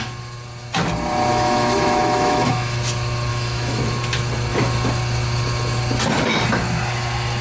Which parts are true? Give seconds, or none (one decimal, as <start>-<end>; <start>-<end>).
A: 0.0-1.3; 2.8-3.3; 3.8-7.4